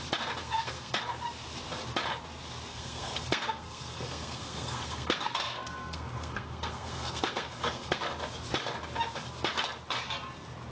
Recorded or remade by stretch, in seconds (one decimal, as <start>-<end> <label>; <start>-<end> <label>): 0.0-0.4 recorded; 0.4-1.0 remade; 1.0-2.7 recorded; 2.7-8.0 remade; 8.0-10.7 recorded